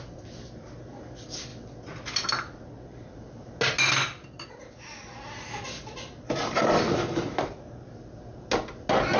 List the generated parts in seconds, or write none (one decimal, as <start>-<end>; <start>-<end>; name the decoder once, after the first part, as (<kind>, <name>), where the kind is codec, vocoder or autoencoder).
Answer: none